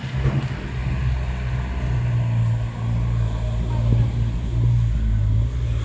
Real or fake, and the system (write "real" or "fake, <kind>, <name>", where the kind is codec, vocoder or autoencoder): real